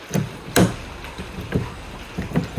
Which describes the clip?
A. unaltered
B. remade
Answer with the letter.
A